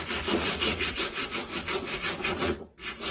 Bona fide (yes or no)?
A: no